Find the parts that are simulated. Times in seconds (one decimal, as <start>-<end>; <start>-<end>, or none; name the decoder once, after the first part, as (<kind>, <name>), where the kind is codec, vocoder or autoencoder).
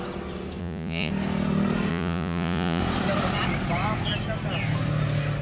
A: 0.6-1.1 (vocoder, Vocos); 1.9-2.8